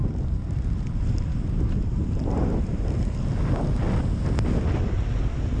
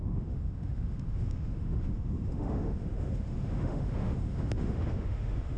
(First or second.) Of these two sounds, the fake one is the second